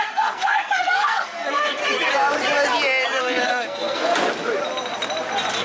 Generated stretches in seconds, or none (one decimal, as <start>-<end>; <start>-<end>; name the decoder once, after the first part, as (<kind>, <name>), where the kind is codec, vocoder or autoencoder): 0.0-1.8 (codec, SNAC); 3.2-4.1